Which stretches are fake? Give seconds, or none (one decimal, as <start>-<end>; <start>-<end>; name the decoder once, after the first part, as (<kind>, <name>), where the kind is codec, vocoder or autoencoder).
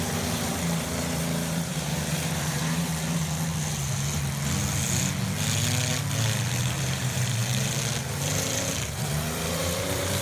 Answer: 0.0-2.9 (vocoder, BigVGAN v2); 6.8-10.2